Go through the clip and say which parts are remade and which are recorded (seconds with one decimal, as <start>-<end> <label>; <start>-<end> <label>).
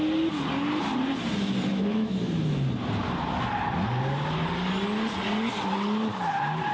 0.0-1.7 recorded; 1.7-2.2 remade; 2.2-6.7 recorded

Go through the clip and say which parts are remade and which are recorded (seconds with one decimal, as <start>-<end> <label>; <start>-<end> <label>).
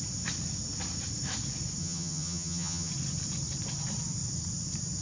0.0-1.8 recorded; 1.8-2.9 remade; 2.9-5.0 recorded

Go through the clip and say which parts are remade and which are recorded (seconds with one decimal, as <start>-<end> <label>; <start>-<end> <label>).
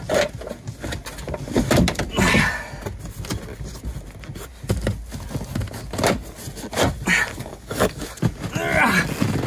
0.0-7.3 recorded; 7.3-8.0 remade; 8.0-9.5 recorded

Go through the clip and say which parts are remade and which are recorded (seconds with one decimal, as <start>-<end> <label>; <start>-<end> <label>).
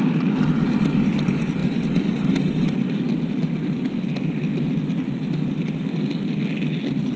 0.0-7.2 recorded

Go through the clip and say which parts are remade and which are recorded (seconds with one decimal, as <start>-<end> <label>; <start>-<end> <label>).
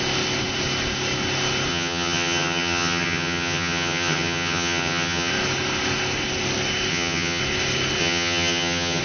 0.0-1.7 recorded; 1.7-5.3 remade; 5.3-6.9 recorded; 6.9-7.4 remade; 7.4-8.0 recorded; 8.0-9.0 remade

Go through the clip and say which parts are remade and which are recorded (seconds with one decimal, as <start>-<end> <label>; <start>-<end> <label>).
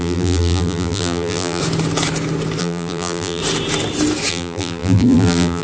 0.0-1.6 remade; 1.6-2.6 recorded; 2.6-3.4 remade; 3.4-4.3 recorded; 4.3-5.6 remade